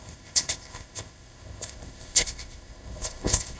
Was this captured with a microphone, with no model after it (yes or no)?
no